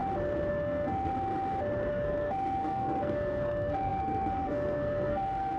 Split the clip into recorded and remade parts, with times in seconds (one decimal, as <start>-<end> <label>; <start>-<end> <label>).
0.0-0.5 recorded; 0.5-1.1 remade; 1.1-1.9 recorded; 1.9-5.6 remade